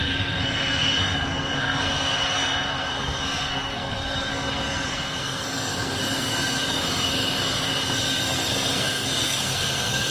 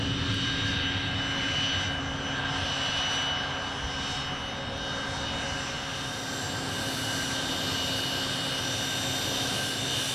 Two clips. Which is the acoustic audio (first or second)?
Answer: second